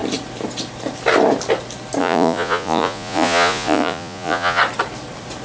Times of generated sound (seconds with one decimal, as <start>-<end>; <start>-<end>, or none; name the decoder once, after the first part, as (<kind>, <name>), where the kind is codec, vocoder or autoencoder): 2.0-4.6 (vocoder, Vocos)